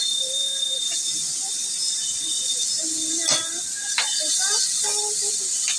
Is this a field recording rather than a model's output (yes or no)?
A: yes